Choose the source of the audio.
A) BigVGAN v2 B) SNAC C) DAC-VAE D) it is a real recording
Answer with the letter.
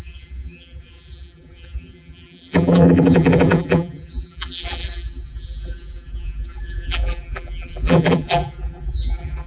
A